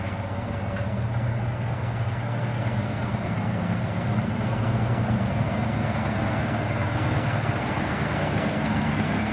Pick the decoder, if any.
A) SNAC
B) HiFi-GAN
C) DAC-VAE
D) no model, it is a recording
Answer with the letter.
A